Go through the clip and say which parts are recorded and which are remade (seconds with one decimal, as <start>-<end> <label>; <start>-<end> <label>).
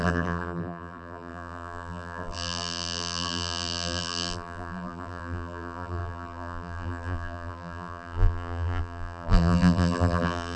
0.0-10.6 remade